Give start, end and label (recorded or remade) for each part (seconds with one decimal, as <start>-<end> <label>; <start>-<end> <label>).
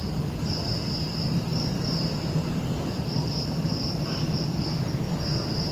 0.0-0.6 remade; 0.6-1.5 recorded; 1.5-4.9 remade; 4.9-5.7 recorded